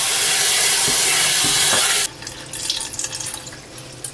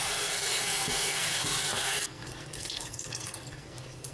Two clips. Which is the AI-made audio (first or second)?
second